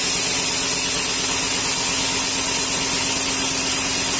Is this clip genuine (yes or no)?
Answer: yes